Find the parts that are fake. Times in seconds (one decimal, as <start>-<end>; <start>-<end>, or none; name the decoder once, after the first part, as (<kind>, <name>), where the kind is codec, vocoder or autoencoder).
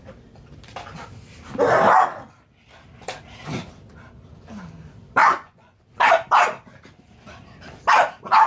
5.2-5.8 (vocoder, Vocos)